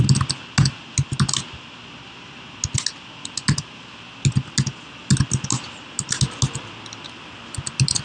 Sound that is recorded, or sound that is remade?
recorded